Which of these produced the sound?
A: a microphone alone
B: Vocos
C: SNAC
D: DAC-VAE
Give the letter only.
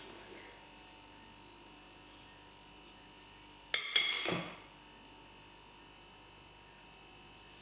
A